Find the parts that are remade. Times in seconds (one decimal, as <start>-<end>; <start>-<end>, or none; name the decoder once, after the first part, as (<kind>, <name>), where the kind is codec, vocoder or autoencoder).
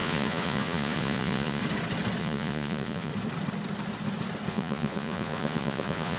0.0-1.6 (vocoder, Vocos); 2.2-3.1; 4.5-6.2